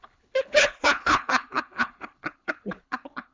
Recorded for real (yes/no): no